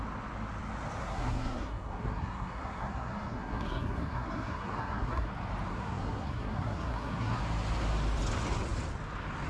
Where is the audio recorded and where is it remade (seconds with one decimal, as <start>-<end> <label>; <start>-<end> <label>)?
0.0-1.0 recorded; 1.0-5.3 remade; 5.3-5.7 recorded; 5.7-7.4 remade; 7.4-9.5 recorded